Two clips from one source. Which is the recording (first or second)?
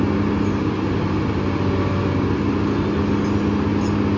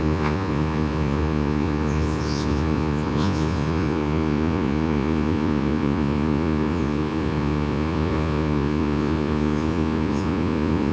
first